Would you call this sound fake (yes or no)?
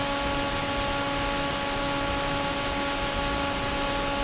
no